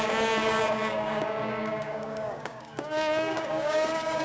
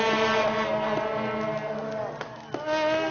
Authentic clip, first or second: second